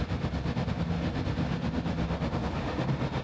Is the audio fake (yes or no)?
no